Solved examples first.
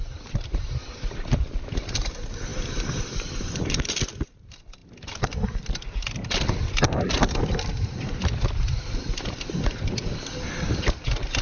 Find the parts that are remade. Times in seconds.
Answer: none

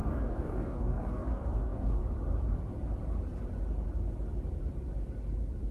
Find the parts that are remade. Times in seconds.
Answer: 0.0-2.0 (codec, DAC)

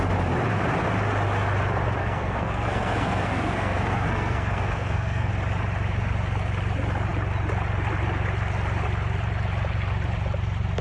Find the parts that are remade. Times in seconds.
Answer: 2.0-5.3 (codec, SNAC)

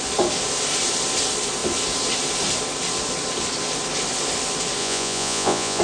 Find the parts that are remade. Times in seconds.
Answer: 4.8-5.8 (vocoder, Vocos)

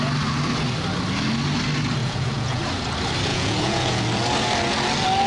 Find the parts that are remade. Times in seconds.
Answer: 2.0-2.6 (vocoder, Vocos); 3.3-4.0

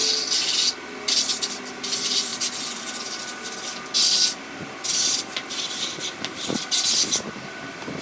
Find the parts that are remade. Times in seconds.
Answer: none

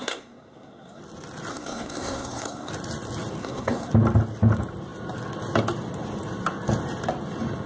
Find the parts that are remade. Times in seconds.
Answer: 0.0-1.0 (codec, SNAC); 1.5-2.7; 3.4-3.9

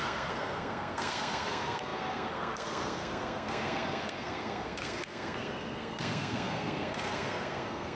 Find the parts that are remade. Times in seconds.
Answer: 0.0-7.9 (codec, SNAC)